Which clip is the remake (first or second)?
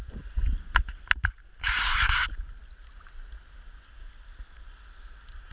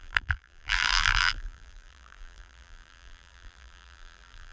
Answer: second